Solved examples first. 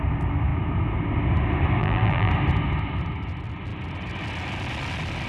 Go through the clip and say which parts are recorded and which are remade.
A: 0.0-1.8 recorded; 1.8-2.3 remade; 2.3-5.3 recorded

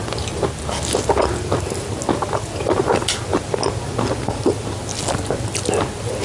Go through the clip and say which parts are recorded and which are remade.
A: 0.0-6.2 recorded

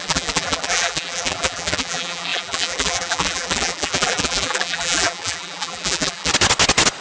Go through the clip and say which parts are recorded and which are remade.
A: 0.0-6.3 remade; 6.3-7.0 recorded

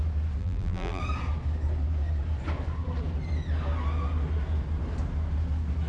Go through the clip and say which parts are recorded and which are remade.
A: 0.0-0.4 recorded; 0.4-1.0 remade; 1.0-5.9 recorded

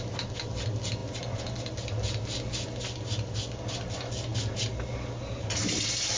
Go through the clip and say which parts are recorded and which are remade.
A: 0.0-6.2 recorded